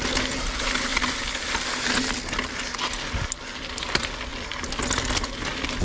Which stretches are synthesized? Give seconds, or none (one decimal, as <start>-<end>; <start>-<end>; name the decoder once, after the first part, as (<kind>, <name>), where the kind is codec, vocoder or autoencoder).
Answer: none